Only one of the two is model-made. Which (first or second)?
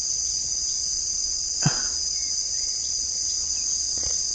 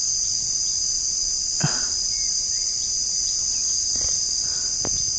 first